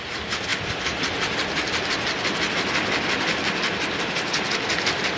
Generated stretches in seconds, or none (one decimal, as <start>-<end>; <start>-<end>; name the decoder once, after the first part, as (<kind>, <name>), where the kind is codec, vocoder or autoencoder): none